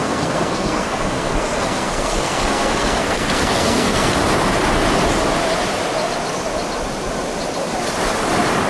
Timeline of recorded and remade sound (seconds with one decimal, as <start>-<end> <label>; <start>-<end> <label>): 0.0-4.1 remade; 4.1-8.7 recorded